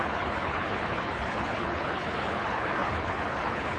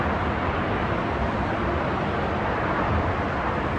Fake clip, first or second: first